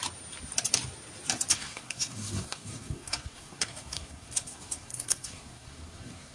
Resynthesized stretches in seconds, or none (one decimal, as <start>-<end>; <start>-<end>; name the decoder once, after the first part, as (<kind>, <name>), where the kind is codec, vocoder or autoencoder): 1.5-6.3 (codec, SNAC)